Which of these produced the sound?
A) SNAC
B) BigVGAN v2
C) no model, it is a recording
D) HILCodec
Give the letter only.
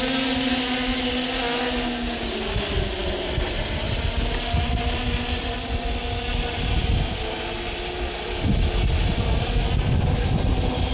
C